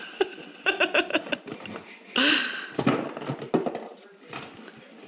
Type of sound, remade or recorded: recorded